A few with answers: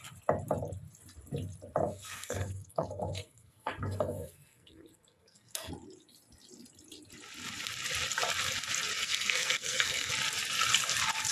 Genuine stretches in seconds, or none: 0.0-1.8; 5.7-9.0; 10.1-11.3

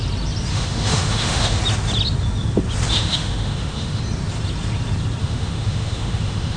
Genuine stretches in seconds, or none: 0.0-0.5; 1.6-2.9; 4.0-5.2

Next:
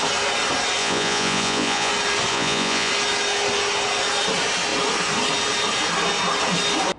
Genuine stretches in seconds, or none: 0.0-0.8; 1.9-2.3; 2.9-7.0

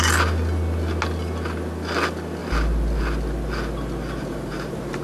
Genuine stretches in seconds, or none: 0.0-4.2

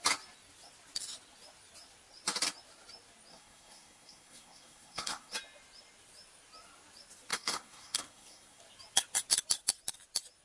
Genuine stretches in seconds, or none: 0.0-3.3; 5.3-7.3; 8.6-10.4

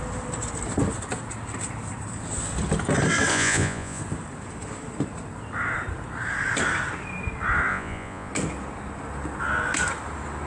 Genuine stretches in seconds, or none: 0.0-3.3; 4.0-7.7; 8.3-10.5

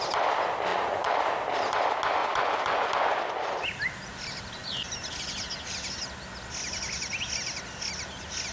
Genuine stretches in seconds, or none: 0.0-0.7; 1.2-2.2; 3.2-8.5

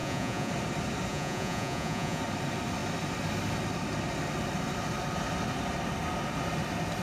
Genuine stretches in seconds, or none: 0.5-1.1; 2.2-7.0